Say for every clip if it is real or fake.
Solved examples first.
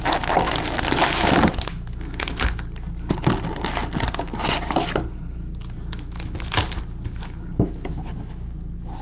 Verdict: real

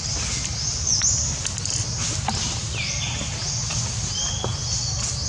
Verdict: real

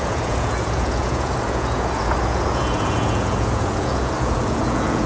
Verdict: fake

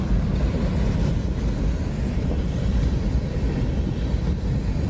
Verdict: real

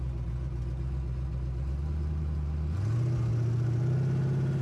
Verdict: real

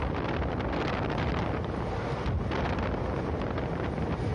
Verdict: real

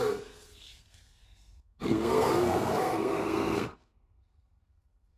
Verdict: fake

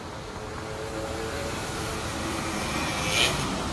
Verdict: real